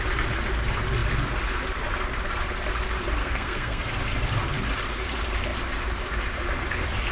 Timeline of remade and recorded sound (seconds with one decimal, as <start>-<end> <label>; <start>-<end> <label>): 0.0-3.2 recorded; 3.2-3.9 remade; 3.9-7.1 recorded